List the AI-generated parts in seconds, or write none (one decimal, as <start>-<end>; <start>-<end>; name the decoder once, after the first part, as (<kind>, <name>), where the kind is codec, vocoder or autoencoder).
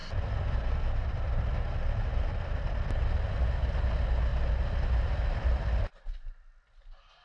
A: none